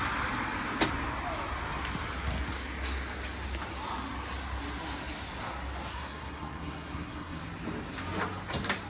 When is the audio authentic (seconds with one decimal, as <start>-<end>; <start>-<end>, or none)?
0.0-5.9; 7.4-8.9